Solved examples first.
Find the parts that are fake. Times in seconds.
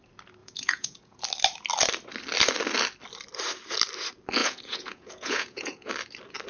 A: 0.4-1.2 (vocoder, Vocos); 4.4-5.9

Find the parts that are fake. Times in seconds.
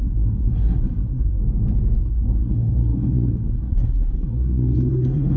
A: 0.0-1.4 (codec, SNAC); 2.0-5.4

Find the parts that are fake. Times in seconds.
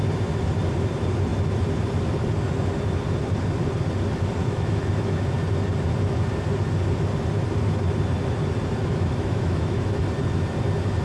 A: 4.4-5.2 (autoencoder, DAC-VAE); 8.8-10.0